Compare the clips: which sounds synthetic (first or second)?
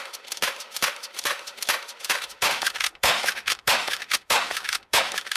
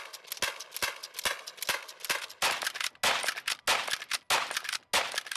first